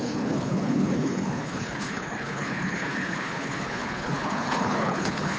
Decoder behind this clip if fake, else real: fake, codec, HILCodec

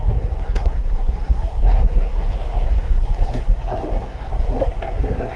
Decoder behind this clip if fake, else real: fake, codec, SNAC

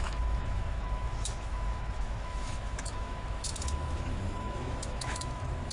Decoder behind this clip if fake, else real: fake, autoencoder, DAC-VAE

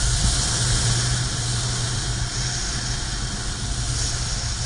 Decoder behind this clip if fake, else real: real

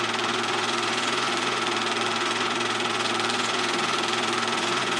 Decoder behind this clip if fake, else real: fake, vocoder, Vocos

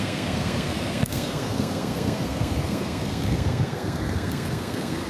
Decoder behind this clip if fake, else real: fake, codec, SNAC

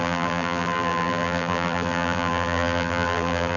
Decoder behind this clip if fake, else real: fake, vocoder, BigVGAN v2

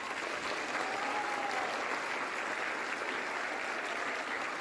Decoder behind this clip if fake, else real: real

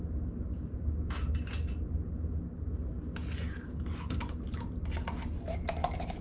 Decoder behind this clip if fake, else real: real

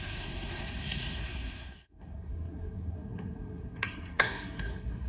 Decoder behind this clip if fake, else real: fake, codec, SNAC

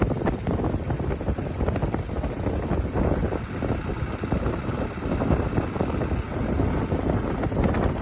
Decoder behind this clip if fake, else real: real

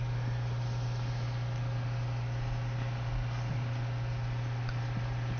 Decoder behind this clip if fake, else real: real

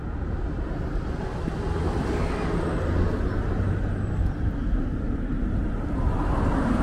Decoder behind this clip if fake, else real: real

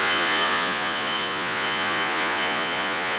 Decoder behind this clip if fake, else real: fake, vocoder, Vocos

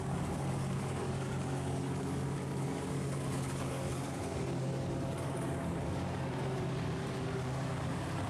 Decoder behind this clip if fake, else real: fake, codec, DAC